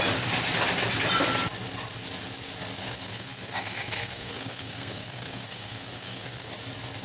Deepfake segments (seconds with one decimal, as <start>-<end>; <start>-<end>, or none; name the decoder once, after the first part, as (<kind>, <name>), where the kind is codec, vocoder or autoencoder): 2.8-6.5 (codec, SNAC)